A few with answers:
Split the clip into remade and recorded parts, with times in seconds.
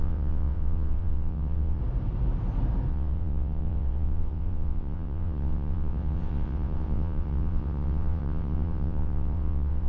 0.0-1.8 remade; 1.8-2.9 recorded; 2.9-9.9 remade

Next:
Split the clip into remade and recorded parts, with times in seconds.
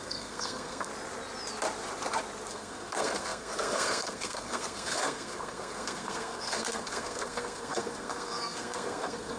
0.0-0.9 remade; 0.9-2.5 recorded; 2.5-9.4 remade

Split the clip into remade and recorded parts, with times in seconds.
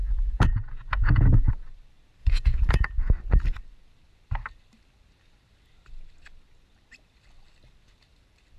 0.0-1.5 remade; 1.5-2.2 recorded; 2.2-3.1 remade; 3.1-8.6 recorded